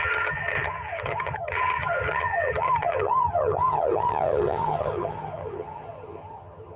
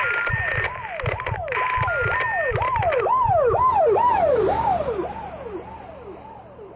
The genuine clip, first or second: second